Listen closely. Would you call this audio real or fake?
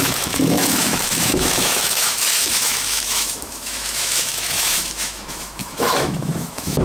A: fake